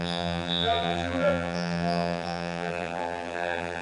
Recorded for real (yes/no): no